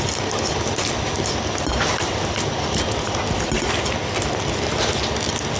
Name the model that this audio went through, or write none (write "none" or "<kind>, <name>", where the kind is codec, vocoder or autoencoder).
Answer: none